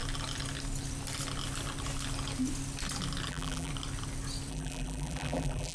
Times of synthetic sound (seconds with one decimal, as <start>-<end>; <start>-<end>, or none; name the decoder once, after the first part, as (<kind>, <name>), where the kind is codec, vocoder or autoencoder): 3.3-3.7 (vocoder, BigVGAN v2); 4.5-5.7